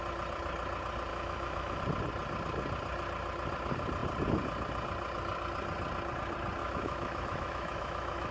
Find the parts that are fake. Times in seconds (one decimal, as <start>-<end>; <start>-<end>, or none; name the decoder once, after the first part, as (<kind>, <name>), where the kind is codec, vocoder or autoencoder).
1.1-1.8 (autoencoder, DAC-VAE); 6.6-8.3